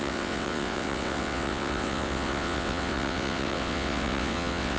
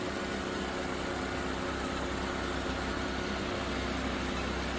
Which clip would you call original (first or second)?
second